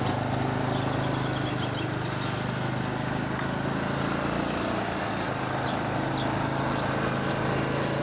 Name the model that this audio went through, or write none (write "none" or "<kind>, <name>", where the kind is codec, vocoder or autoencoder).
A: none